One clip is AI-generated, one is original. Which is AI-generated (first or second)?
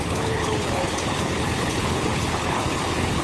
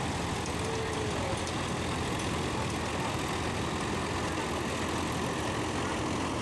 first